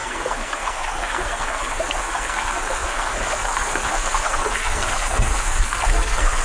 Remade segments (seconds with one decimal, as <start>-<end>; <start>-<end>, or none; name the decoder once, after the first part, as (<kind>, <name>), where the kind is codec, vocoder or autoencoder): 0.0-6.4 (codec, SNAC)

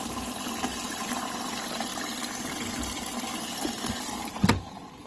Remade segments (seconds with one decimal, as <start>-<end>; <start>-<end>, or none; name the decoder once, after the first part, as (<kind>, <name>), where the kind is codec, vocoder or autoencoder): none

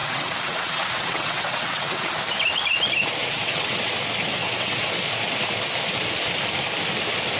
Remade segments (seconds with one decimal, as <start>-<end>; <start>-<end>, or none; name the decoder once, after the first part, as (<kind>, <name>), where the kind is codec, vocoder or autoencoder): 0.0-2.1 (vocoder, WaveNeXt); 3.2-3.9; 4.4-4.9

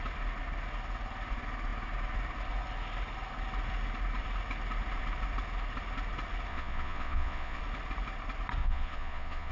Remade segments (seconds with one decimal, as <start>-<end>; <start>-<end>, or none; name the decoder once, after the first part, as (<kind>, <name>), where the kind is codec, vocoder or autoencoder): 6.5-7.6 (vocoder, Vocos); 8.6-9.5